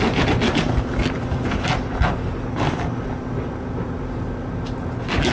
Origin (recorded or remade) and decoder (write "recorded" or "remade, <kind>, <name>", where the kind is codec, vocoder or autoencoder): recorded